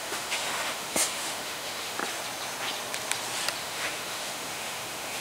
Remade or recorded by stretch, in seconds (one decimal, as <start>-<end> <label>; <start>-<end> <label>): 0.0-2.0 remade; 2.0-3.6 recorded; 3.6-5.2 remade